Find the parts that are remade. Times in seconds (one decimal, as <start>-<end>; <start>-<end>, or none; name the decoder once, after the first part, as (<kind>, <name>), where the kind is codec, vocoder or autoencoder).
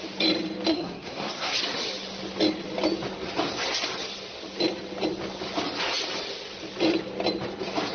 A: 0.7-1.5 (codec, SNAC)